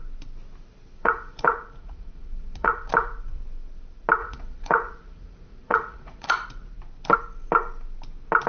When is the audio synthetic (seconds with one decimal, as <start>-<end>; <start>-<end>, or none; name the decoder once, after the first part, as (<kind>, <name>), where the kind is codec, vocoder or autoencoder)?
1.0-2.9 (vocoder, Vocos); 4.2-6.3